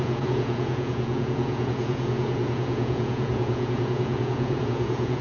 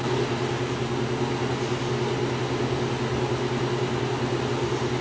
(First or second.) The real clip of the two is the second